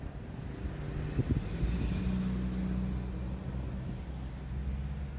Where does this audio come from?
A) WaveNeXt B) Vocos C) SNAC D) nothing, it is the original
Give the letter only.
D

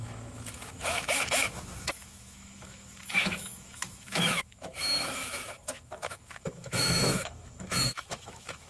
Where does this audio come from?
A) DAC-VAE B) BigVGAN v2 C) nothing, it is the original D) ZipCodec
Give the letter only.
A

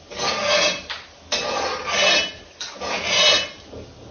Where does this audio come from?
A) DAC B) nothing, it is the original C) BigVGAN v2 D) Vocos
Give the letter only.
B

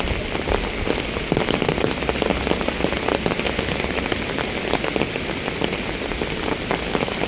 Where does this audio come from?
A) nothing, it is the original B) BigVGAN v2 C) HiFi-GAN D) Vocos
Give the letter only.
A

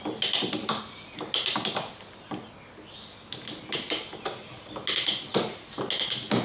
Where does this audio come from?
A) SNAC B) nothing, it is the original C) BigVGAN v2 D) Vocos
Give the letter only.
B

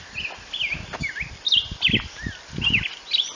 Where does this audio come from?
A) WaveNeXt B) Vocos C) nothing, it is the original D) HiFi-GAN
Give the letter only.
C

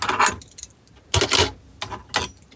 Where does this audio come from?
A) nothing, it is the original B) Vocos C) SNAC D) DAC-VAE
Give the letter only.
A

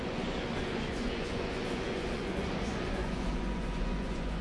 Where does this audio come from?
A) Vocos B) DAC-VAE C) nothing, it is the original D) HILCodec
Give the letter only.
A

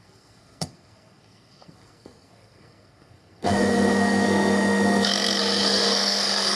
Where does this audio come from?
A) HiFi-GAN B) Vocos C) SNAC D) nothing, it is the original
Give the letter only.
C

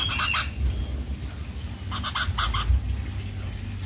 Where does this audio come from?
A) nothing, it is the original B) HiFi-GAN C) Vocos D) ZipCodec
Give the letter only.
A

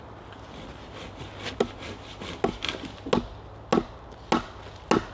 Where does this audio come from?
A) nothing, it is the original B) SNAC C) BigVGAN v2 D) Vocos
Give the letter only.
A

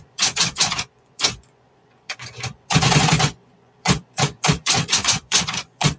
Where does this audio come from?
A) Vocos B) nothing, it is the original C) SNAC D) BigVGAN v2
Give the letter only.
A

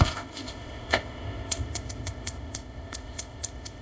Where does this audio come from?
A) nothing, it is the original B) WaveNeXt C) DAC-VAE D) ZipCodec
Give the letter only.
D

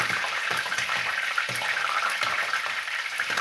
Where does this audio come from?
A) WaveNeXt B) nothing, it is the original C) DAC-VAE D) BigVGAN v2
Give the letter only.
D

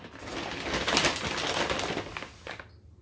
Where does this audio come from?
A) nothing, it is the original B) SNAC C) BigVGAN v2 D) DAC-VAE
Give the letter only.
A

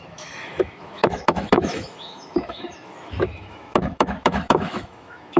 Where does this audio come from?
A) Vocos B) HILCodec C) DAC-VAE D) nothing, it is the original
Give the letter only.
C